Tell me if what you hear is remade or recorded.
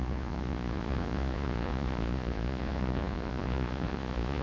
remade